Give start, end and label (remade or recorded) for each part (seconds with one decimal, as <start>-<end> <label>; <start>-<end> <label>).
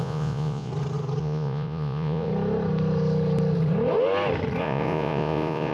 0.0-0.7 remade; 0.7-1.2 recorded; 1.2-2.3 remade; 2.3-4.6 recorded; 4.6-5.7 remade